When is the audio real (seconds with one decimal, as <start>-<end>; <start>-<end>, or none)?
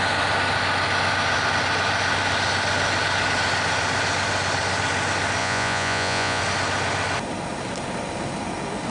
0.0-5.4; 6.4-8.9